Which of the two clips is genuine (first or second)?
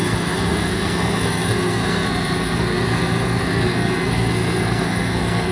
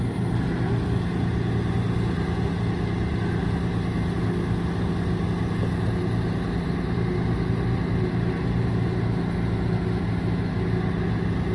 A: second